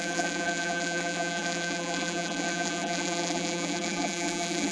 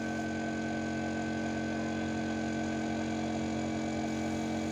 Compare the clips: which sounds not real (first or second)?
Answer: first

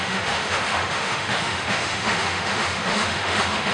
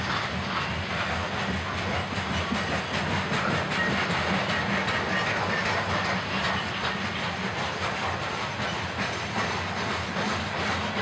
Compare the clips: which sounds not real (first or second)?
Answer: first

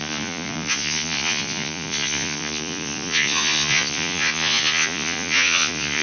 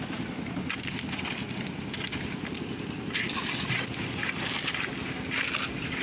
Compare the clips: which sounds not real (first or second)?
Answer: first